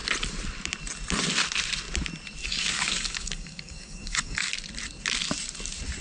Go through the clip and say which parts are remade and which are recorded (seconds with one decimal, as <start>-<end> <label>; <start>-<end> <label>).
0.0-2.4 recorded; 2.4-4.5 remade; 4.5-6.0 recorded